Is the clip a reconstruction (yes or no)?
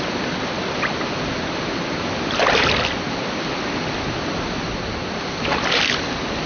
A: no